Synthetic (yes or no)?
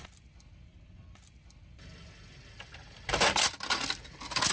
no